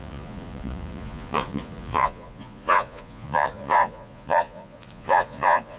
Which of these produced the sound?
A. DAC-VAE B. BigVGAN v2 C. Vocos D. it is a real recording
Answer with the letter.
C